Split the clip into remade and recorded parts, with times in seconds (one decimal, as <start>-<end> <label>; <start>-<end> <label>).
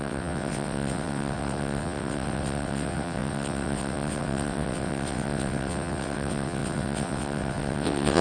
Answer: 0.0-8.2 remade